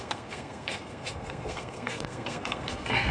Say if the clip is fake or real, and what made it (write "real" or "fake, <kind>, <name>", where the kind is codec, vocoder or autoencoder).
fake, codec, SNAC